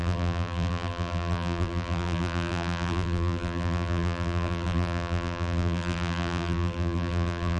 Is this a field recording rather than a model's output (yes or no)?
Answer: no